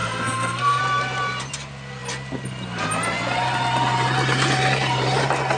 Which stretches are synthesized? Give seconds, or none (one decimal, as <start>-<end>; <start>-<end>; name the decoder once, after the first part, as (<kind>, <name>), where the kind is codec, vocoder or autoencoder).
0.0-0.8 (codec, SNAC)